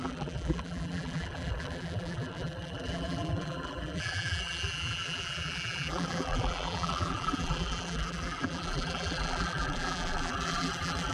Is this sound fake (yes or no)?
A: yes